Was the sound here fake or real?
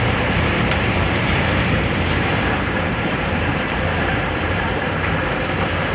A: fake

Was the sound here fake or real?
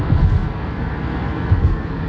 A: fake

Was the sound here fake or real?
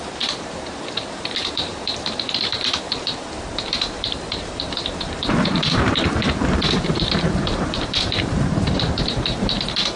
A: fake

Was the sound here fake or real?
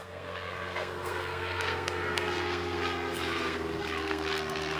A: fake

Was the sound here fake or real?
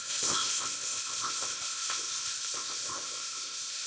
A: fake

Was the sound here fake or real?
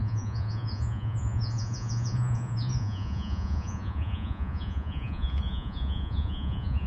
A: fake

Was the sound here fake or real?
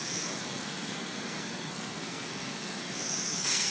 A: fake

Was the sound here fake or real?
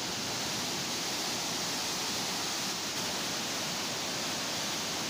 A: real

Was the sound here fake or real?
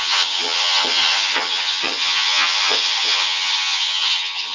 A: fake